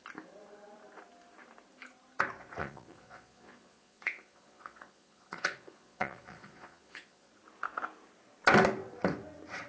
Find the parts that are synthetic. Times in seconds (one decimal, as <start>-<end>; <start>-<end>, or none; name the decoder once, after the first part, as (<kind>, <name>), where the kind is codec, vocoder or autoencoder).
2.6-7.3 (vocoder, Vocos)

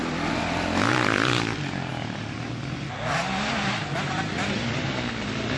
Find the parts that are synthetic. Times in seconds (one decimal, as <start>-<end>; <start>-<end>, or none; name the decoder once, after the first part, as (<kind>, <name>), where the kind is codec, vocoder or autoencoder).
none